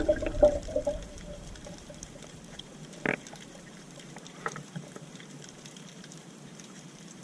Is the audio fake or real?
fake